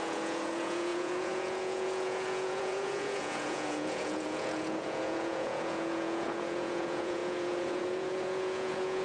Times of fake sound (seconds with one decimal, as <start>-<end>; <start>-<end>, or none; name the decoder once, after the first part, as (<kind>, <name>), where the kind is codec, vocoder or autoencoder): 0.0-9.0 (vocoder, Vocos)